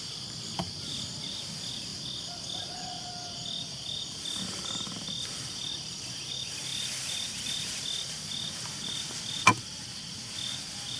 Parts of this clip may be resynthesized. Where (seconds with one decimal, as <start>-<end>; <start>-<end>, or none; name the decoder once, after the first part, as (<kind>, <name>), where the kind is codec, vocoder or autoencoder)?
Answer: none